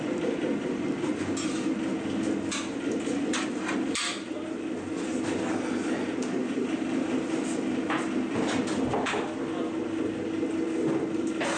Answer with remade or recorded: recorded